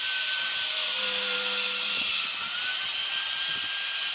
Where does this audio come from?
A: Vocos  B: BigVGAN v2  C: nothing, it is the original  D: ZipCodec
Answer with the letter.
B